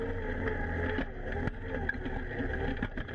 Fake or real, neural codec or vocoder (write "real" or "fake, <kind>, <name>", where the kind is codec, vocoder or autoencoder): real